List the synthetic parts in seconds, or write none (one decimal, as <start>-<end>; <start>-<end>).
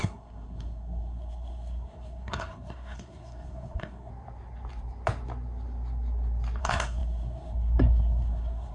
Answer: 0.0-4.1; 6.6-8.7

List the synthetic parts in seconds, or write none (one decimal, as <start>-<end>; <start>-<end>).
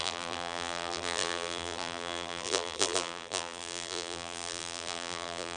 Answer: 0.0-5.6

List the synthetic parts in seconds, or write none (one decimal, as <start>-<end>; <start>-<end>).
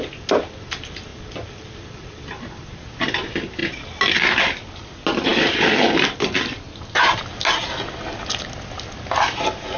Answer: 1.1-2.9; 5.3-7.2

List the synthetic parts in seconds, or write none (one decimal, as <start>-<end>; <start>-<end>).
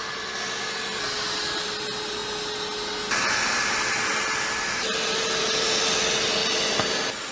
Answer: none